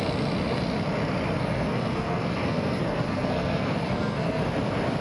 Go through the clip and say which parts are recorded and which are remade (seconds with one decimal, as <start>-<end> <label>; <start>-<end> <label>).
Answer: 0.0-1.4 recorded; 1.4-4.4 remade; 4.4-5.0 recorded